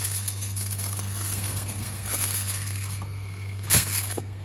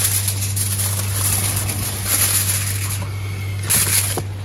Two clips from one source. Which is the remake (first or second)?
first